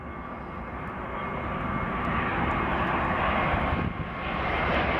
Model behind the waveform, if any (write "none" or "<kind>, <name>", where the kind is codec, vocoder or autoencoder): none